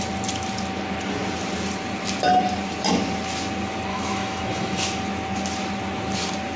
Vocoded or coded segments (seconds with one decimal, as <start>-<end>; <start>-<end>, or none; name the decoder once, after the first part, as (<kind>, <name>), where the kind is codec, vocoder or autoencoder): 3.9-4.8 (autoencoder, DAC-VAE)